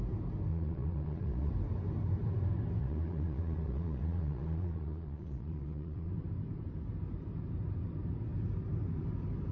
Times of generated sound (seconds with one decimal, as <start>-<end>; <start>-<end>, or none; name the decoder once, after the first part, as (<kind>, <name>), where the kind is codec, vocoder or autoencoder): 0.5-1.5 (vocoder, Vocos); 2.8-6.1